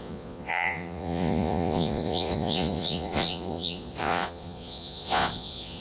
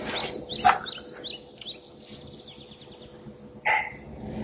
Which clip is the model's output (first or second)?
first